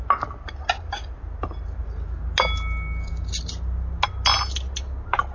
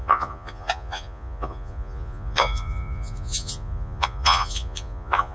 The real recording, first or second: first